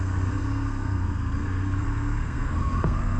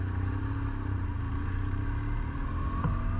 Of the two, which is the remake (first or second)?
first